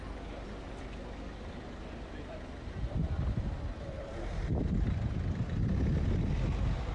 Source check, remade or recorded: recorded